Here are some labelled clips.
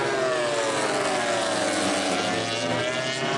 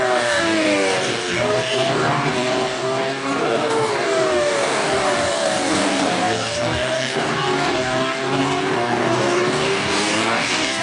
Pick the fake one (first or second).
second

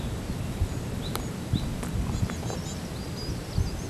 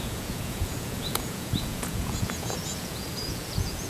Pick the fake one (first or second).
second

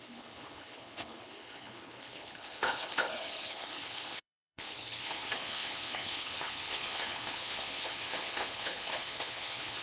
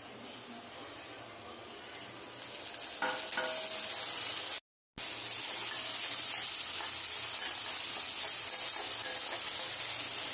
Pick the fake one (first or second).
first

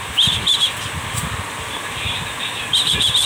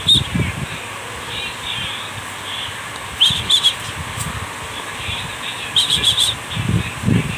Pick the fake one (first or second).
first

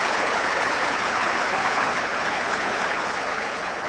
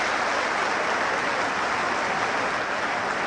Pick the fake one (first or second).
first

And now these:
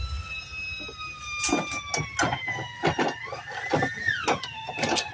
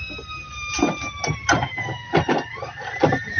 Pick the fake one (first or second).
second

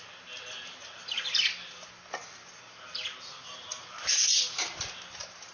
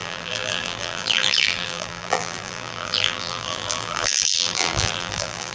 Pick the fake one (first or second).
second